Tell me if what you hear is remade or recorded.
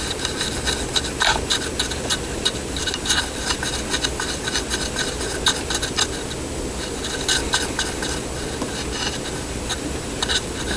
recorded